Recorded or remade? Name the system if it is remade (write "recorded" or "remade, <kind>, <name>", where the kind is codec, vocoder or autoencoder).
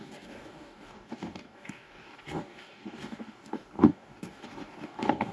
remade, codec, DAC